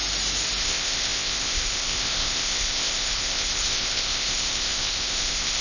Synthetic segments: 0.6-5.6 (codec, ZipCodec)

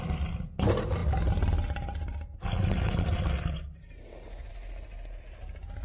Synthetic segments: none

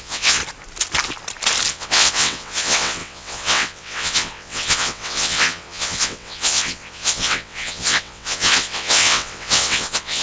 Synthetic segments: 0.0-0.4 (vocoder, WaveNeXt); 1.7-10.2

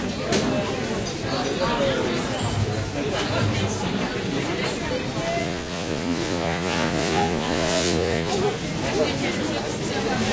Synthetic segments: 5.4-8.3 (vocoder, Vocos)

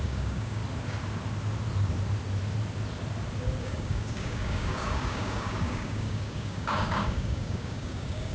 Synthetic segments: 0.0-0.6 (codec, DAC); 3.6-8.3

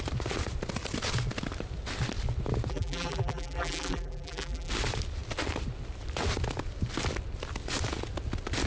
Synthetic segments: 2.7-4.7 (vocoder, BigVGAN v2)

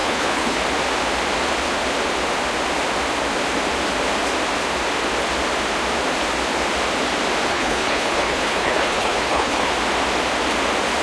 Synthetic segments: 0.0-0.6 (codec, HILCodec); 7.5-9.7

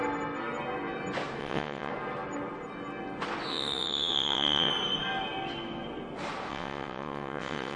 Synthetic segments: 1.4-1.9 (vocoder, WaveNeXt); 3.5-4.7; 6.5-7.8